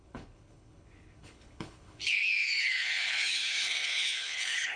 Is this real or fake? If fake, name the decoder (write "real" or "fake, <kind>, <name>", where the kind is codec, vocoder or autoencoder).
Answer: fake, codec, HILCodec